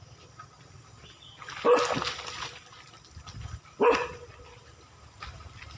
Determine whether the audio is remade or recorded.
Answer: recorded